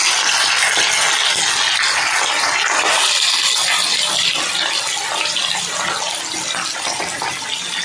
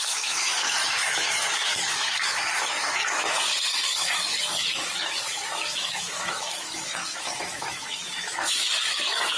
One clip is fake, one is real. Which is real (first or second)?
first